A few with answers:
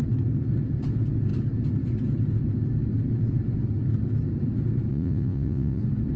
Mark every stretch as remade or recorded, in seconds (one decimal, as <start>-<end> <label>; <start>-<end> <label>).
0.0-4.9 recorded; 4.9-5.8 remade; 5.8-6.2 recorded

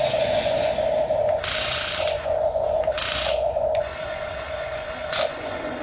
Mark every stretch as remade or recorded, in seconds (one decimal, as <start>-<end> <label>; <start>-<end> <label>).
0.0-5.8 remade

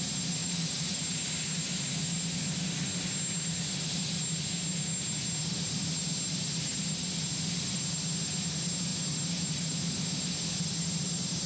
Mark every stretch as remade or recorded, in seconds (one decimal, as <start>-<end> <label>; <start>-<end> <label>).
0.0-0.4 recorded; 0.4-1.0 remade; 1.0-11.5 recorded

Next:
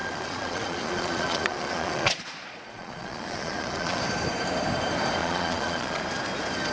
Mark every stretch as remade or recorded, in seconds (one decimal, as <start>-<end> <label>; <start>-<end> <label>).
0.0-4.0 remade; 4.0-5.2 recorded; 5.2-6.0 remade; 6.0-6.7 recorded